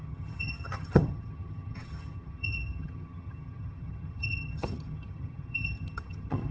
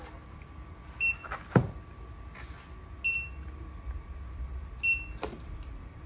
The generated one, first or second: first